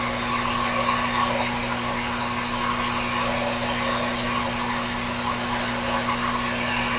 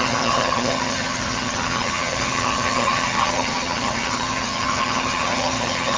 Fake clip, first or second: second